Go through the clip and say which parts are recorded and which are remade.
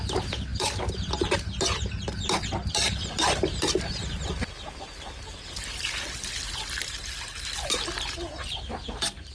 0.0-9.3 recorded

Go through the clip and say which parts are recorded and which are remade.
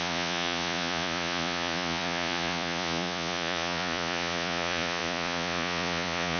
0.0-6.4 remade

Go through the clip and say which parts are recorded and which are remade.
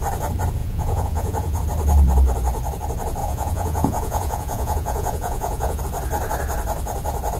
0.0-0.6 recorded; 0.6-1.6 remade; 1.6-3.2 recorded; 3.2-5.8 remade; 5.8-7.4 recorded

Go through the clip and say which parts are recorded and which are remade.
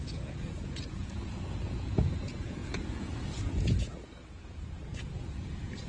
0.0-5.9 remade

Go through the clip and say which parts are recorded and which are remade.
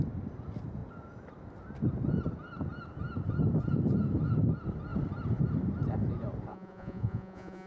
0.0-6.5 recorded; 6.5-7.7 remade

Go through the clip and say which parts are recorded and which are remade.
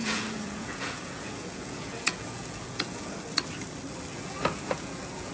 0.0-3.2 remade; 3.2-4.1 recorded; 4.1-5.3 remade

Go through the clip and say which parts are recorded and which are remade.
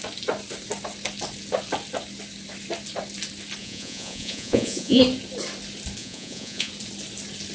0.0-3.6 recorded; 3.6-5.0 remade; 5.0-6.0 recorded; 6.0-6.7 remade; 6.7-7.5 recorded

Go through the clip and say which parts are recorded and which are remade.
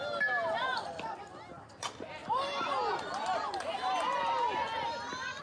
0.0-5.4 recorded